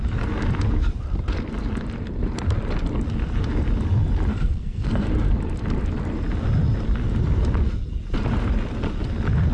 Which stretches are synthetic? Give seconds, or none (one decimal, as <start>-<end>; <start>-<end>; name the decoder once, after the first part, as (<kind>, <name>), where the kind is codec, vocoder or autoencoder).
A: 4.3-5.1 (codec, SNAC)